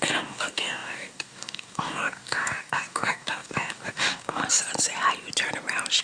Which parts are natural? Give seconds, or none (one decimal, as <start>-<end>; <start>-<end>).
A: 4.4-6.0